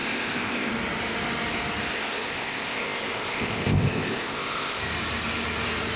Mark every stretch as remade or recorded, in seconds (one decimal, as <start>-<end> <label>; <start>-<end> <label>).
0.0-0.7 remade; 0.7-1.9 recorded; 1.9-4.8 remade; 4.8-6.0 recorded